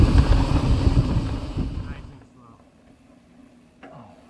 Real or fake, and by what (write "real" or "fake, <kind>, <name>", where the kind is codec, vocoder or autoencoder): real